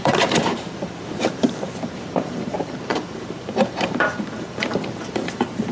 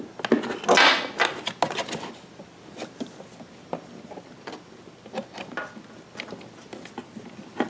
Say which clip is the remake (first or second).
first